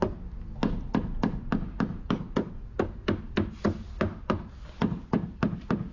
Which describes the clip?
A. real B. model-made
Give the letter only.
A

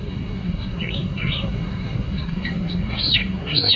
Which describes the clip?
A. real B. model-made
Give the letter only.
B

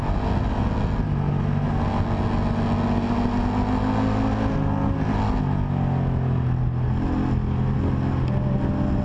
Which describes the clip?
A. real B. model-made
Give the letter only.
A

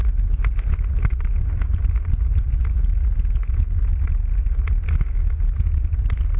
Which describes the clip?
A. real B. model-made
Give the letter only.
A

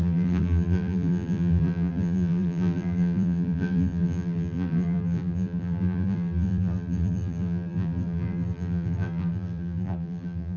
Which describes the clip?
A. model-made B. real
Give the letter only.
A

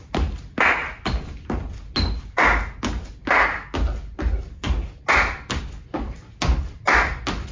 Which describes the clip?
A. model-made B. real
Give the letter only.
B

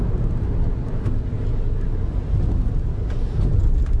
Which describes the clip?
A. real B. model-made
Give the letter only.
A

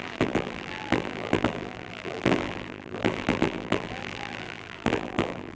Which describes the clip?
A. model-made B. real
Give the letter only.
A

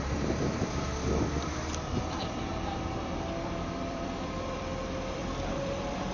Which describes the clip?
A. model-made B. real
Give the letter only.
A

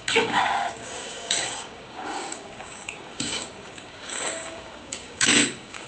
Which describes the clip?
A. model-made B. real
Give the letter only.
A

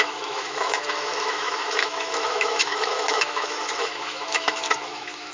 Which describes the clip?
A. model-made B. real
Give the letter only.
A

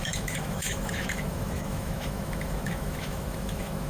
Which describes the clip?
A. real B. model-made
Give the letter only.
B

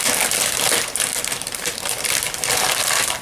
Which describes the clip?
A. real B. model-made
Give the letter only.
A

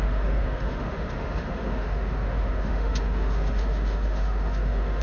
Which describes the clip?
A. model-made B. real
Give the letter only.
A